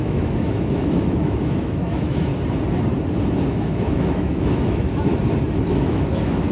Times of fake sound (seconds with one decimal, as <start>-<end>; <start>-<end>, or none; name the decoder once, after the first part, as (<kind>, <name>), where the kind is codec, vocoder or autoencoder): 0.0-2.3 (autoencoder, DAC-VAE); 3.5-5.1; 5.7-6.5

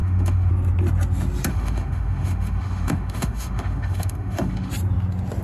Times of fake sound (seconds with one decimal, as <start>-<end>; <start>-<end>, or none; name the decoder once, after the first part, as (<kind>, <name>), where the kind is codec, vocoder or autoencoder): 0.0-0.5 (autoencoder, DAC-VAE); 1.5-4.7